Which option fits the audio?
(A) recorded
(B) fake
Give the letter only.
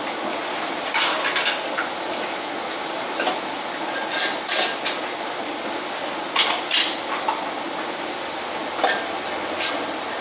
A